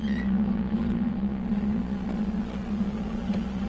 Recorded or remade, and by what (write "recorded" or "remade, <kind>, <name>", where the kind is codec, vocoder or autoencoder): remade, vocoder, Vocos